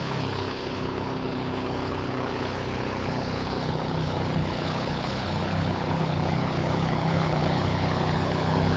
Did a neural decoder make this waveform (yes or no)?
yes